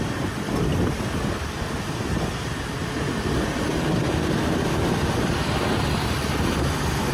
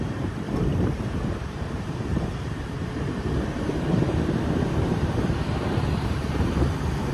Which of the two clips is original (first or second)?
first